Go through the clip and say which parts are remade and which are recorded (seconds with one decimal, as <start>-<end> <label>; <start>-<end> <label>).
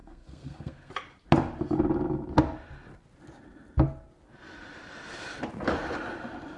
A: 0.0-0.9 remade; 0.9-6.6 recorded